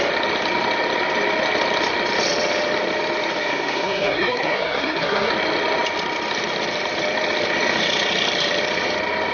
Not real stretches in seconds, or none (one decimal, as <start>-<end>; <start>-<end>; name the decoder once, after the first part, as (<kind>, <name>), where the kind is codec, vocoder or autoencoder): 3.4-5.3 (codec, SNAC)